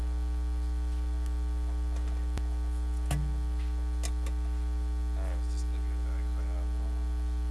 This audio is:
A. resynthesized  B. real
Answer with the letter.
B